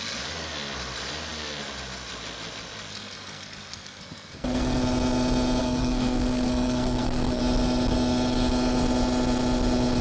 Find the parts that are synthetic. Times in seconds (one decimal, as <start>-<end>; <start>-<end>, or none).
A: 2.9-4.8; 5.6-7.4